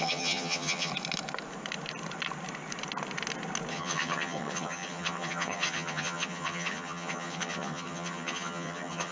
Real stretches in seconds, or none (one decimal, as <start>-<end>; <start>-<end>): 0.9-3.7